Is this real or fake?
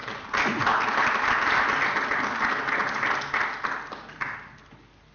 real